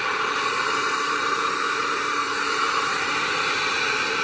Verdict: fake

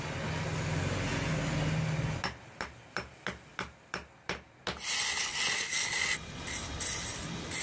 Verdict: real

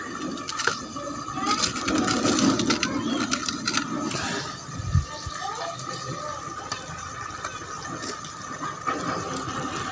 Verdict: real